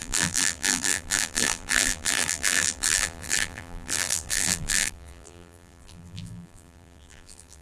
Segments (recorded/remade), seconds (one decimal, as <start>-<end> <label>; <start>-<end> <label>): 0.0-7.6 remade